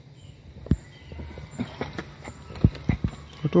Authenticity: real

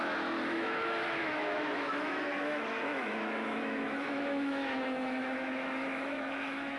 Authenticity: fake